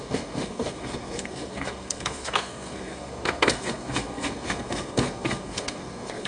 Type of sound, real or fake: fake